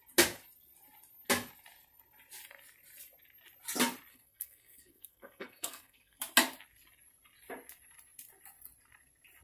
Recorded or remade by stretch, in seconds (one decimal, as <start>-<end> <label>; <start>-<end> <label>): 0.0-4.1 recorded; 4.1-6.2 remade; 6.2-9.4 recorded